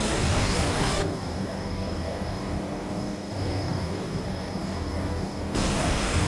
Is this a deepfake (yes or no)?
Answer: yes